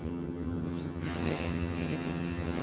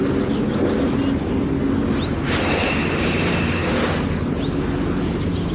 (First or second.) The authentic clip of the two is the second